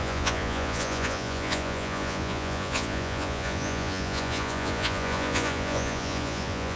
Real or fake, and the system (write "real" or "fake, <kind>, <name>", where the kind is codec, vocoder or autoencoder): fake, vocoder, Vocos